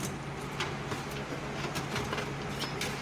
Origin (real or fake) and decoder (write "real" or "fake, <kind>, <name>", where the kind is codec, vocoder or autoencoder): real